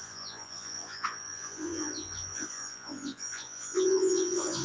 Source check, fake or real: fake